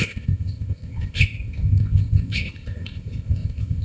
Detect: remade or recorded remade